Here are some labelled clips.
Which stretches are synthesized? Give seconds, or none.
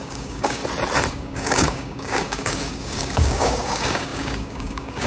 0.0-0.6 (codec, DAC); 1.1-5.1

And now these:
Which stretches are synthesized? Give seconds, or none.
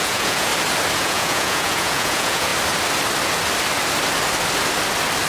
0.0-0.5 (vocoder, Vocos); 1.0-2.5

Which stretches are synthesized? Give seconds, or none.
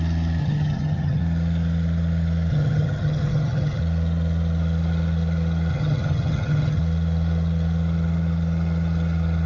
0.4-1.2 (vocoder, HiFi-GAN); 2.5-3.8; 5.7-6.8